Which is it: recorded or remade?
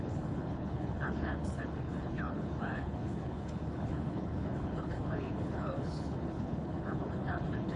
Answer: remade